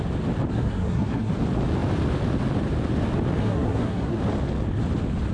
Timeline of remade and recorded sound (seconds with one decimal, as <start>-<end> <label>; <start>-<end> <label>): 0.0-0.5 recorded; 0.5-1.3 remade; 1.3-3.4 recorded; 3.4-4.2 remade; 4.2-5.3 recorded